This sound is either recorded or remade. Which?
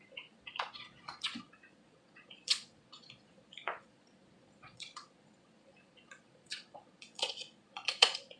remade